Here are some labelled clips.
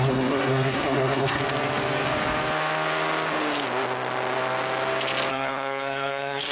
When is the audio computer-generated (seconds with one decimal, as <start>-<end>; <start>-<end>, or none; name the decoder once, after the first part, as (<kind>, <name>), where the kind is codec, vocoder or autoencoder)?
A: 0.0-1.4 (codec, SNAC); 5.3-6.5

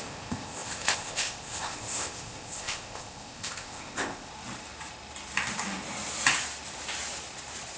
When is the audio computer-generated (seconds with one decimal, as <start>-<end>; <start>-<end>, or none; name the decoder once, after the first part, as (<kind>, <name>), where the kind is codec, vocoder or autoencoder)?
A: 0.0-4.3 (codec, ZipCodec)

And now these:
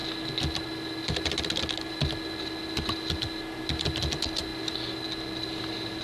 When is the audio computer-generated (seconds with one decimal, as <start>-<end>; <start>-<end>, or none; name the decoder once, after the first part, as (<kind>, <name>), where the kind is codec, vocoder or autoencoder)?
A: none

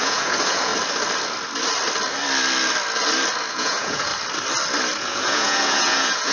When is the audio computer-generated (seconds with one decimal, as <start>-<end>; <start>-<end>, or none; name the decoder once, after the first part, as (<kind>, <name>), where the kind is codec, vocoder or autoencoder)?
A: 0.0-0.7 (vocoder, Vocos); 3.5-4.1; 5.0-6.3

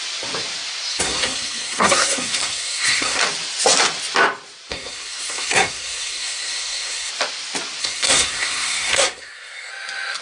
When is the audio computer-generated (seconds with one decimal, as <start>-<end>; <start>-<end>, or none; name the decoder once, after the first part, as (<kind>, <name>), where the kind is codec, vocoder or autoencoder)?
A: 0.9-3.2 (codec, SNAC); 4.7-7.1; 7.8-9.7

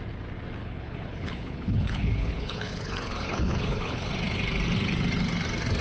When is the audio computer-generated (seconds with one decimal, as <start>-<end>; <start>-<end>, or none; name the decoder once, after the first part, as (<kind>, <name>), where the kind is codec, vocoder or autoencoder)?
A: 0.6-4.1 (codec, HILCodec)

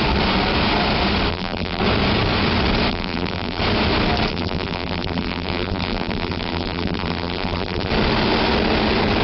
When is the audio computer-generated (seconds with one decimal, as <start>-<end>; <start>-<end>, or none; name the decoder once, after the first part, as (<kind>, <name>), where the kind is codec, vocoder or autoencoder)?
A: 1.3-1.8 (vocoder, BigVGAN v2); 2.9-3.6; 4.3-7.9